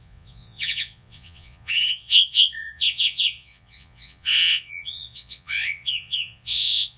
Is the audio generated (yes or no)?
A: yes